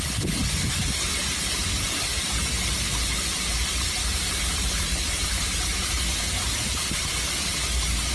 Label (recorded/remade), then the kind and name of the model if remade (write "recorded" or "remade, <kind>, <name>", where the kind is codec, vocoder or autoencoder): recorded